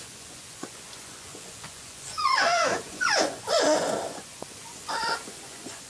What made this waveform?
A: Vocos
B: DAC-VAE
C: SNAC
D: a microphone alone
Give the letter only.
A